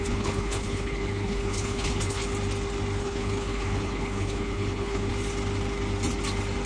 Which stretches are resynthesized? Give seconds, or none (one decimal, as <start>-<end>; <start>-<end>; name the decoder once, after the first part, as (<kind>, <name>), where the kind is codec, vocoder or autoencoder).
0.0-2.2 (codec, HILCodec); 3.0-5.1